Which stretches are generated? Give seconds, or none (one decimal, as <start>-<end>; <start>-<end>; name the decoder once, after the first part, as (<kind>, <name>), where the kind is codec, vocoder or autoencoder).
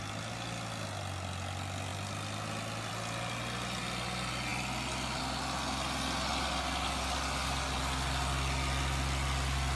none